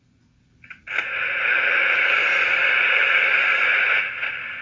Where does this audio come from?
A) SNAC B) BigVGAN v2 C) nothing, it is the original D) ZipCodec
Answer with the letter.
C